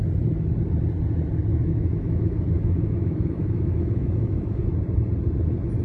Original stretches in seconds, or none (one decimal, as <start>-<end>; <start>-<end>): 0.0-1.5; 4.6-5.8